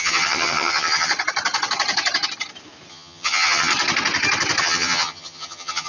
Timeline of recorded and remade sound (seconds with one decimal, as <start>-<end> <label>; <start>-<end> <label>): 0.0-1.1 remade; 1.1-2.9 recorded; 2.9-3.7 remade; 3.7-4.6 recorded; 4.6-5.9 remade

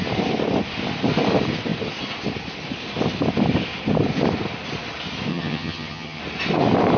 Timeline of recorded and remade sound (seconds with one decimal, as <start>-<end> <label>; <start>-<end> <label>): 0.0-5.3 recorded; 5.3-6.2 remade; 6.2-7.0 recorded

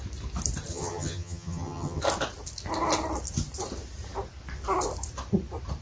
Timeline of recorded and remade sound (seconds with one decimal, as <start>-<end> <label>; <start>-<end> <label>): 0.0-0.7 recorded; 0.7-2.0 remade; 2.0-5.8 recorded

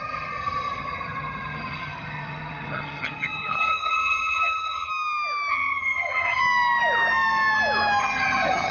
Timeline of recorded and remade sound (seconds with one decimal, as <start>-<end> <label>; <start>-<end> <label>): 0.0-4.9 remade; 4.9-5.5 recorded; 5.5-6.4 remade; 6.4-8.0 recorded; 8.0-8.7 remade